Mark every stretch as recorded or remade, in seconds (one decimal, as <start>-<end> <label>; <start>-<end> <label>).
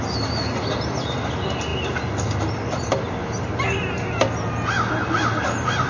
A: 0.0-5.9 recorded